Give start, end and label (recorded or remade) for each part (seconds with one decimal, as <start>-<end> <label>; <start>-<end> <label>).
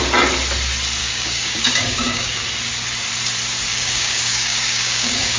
0.0-1.0 recorded; 1.0-2.4 remade; 2.4-3.7 recorded; 3.7-5.4 remade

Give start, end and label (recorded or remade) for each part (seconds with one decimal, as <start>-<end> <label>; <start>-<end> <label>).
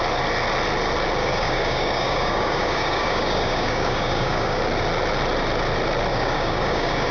0.0-1.2 recorded; 1.2-4.6 remade; 4.6-6.1 recorded; 6.1-7.1 remade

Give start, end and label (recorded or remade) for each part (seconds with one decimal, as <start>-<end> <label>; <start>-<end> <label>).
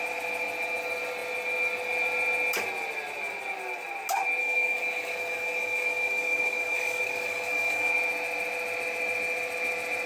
0.0-4.4 recorded; 4.4-7.9 remade; 7.9-10.1 recorded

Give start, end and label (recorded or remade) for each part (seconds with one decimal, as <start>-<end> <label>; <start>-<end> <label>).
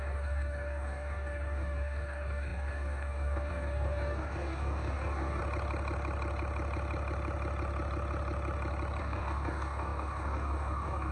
0.0-5.4 remade; 5.4-9.0 recorded; 9.0-11.1 remade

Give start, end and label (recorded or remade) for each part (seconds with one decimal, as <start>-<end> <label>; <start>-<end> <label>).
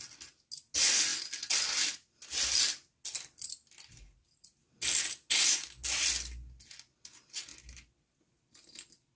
0.0-9.2 recorded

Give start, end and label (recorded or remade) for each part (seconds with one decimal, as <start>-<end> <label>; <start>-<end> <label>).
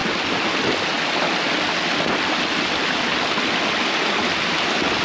0.0-5.0 recorded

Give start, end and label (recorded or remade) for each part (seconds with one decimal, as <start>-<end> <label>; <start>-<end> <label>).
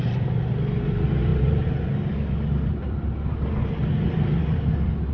0.0-5.1 recorded